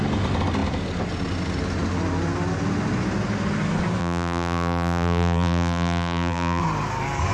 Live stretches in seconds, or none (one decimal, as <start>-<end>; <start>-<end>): 0.0-4.0; 6.6-7.3